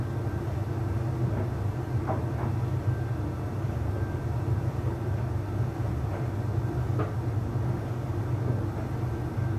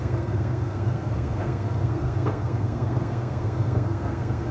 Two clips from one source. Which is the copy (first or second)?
second